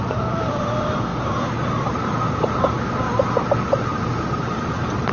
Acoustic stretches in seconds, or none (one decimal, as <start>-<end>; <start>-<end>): 0.0-5.1